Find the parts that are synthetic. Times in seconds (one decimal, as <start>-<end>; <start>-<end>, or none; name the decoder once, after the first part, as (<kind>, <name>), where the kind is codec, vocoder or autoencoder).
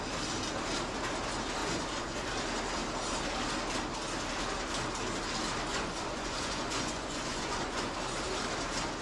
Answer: 1.6-2.3 (vocoder, Vocos); 5.7-7.9